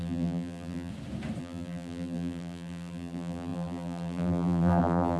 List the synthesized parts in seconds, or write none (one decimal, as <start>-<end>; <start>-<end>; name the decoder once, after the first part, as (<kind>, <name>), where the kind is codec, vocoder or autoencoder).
0.0-0.9 (vocoder, BigVGAN v2); 1.4-5.2